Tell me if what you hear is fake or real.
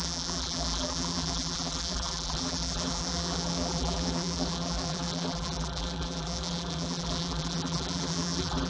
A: fake